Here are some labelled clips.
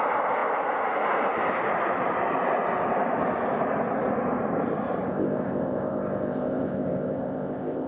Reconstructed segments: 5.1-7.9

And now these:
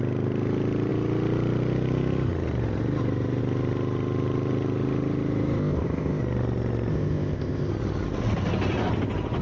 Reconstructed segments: 5.6-6.2; 6.9-7.7

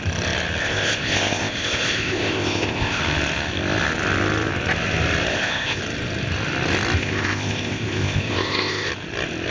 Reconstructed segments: 0.6-3.0; 5.3-5.8; 7.0-8.9

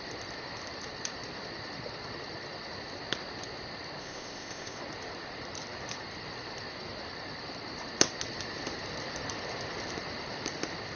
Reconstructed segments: 4.0-4.8

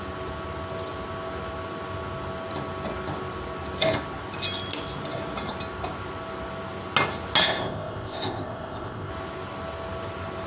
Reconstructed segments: 7.4-9.1

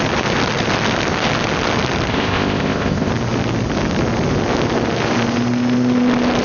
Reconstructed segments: 2.1-3.1

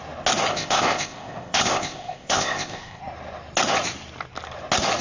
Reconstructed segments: 0.5-3.0

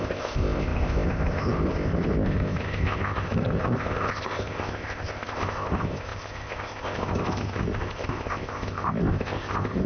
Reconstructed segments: 0.0-9.9